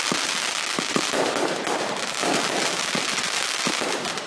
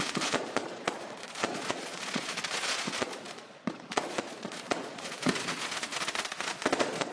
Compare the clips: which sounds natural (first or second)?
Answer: first